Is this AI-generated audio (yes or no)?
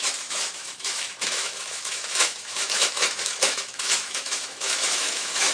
yes